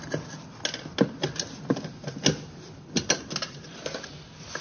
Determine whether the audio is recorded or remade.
recorded